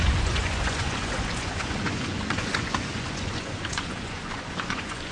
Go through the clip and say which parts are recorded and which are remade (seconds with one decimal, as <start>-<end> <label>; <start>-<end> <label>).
0.0-5.1 remade